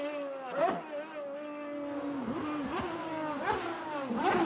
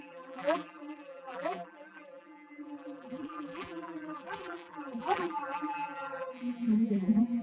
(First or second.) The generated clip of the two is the second